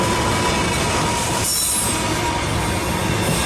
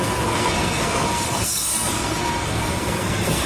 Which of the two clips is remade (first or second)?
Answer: second